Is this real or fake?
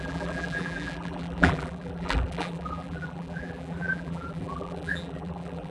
fake